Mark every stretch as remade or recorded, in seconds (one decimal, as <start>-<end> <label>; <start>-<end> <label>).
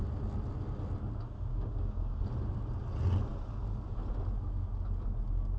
0.0-1.5 recorded; 1.5-2.2 remade; 2.2-5.6 recorded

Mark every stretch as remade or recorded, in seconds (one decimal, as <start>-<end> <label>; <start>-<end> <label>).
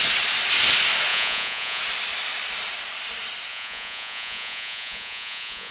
0.0-1.1 recorded; 1.1-1.8 remade; 1.8-3.5 recorded; 3.5-5.7 remade